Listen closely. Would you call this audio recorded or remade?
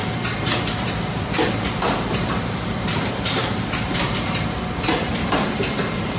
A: remade